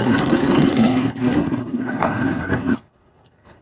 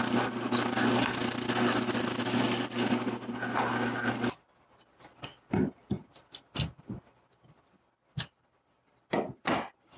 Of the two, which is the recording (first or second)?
second